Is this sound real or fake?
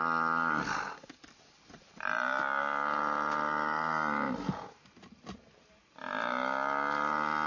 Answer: real